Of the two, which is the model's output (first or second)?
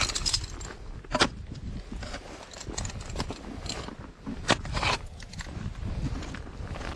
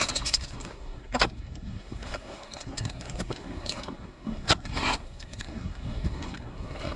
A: second